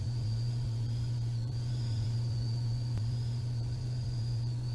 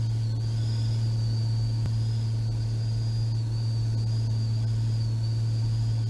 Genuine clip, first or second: second